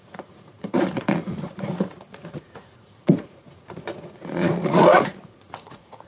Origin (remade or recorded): remade